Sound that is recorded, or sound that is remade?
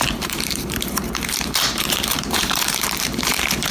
remade